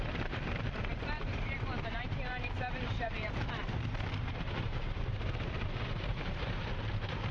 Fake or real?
fake